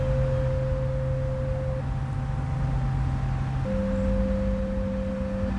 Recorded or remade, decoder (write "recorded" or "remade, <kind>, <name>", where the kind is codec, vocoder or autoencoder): recorded